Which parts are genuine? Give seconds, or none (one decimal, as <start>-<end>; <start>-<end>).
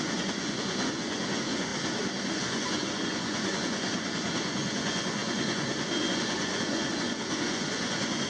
1.7-2.3